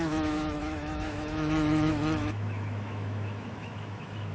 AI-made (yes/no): yes